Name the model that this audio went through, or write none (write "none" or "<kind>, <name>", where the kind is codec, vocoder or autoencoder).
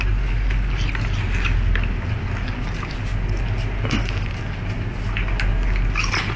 none